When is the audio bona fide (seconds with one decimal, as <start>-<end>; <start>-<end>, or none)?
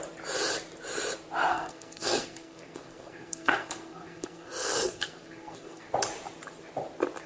0.0-1.5; 5.9-7.3